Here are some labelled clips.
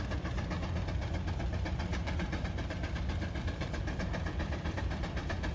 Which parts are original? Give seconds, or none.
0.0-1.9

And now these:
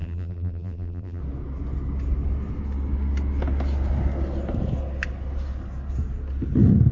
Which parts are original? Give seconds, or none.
1.2-6.9

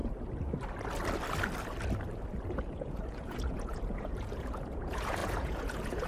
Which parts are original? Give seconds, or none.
0.0-2.5